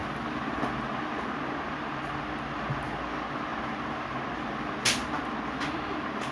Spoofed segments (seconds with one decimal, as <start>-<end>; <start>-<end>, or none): none